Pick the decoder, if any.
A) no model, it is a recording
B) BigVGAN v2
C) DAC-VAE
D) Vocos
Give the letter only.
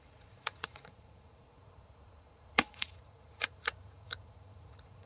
D